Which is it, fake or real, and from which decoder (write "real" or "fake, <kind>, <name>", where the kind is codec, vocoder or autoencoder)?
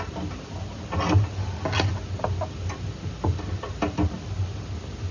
real